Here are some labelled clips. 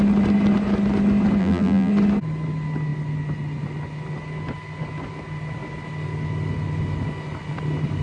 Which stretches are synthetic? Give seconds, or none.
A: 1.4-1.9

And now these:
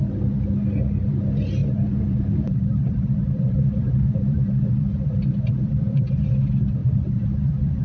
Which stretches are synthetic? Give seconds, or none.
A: 1.6-6.1; 6.8-7.8

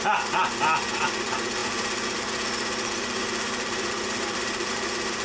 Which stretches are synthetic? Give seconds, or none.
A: 1.6-4.7

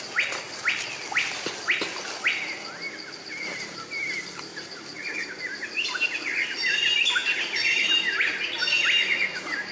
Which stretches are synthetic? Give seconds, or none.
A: 4.5-6.0; 7.2-8.2

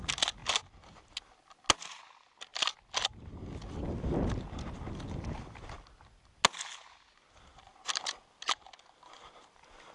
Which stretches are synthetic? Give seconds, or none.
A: none

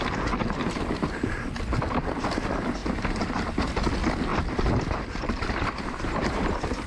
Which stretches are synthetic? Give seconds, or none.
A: 0.4-1.5; 2.8-3.3; 4.3-6.9